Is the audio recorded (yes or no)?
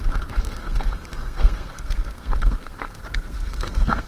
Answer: no